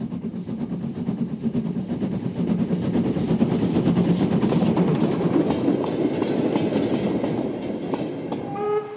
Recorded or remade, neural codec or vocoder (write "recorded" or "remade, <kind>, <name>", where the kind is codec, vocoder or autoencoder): recorded